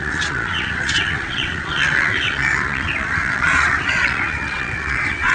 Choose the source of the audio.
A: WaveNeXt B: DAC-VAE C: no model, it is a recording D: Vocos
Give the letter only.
A